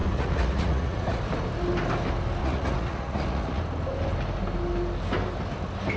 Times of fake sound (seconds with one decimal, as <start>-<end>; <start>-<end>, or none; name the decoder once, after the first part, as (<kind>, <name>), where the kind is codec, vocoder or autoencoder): 0.0-1.2 (vocoder, Vocos); 2.4-3.6